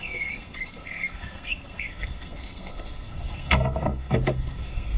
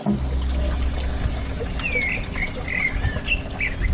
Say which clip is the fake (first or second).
first